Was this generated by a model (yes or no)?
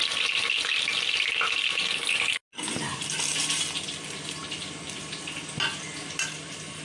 no